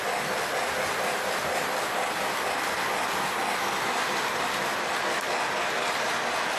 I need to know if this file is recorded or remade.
recorded